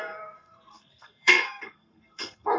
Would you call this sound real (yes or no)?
no